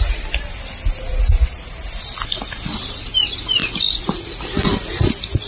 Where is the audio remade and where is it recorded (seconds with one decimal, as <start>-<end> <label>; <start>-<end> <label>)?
0.0-5.5 recorded